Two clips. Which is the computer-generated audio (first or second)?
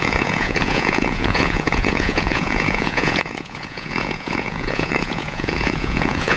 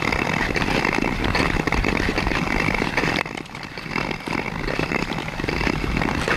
first